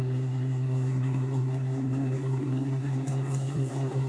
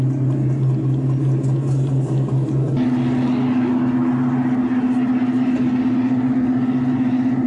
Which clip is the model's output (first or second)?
first